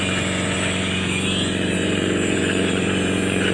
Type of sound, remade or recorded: remade